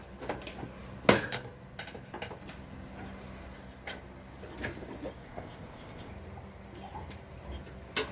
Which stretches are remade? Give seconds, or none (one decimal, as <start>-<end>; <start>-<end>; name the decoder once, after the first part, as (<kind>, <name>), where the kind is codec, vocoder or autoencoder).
5.2-6.1 (codec, ZipCodec)